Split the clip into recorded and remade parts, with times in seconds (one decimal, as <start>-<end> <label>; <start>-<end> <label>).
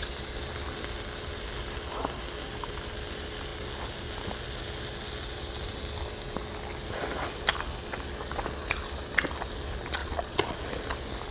0.0-10.0 recorded; 10.0-10.6 remade; 10.6-11.3 recorded